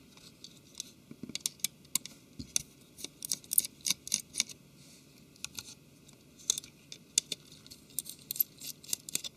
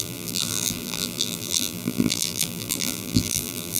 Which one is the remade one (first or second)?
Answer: second